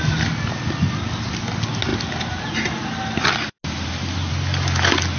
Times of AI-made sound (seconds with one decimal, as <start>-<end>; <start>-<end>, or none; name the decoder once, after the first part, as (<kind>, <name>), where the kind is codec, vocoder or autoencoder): none